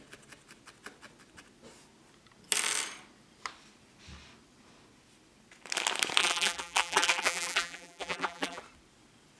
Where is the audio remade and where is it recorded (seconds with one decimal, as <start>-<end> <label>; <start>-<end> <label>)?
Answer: 0.0-6.2 recorded; 6.2-8.6 remade; 8.6-9.4 recorded